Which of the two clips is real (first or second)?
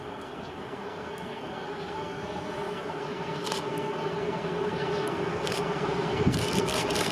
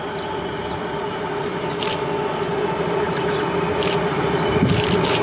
second